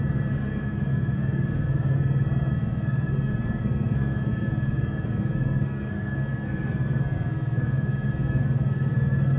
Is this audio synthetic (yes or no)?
yes